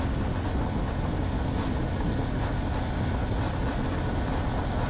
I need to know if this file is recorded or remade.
recorded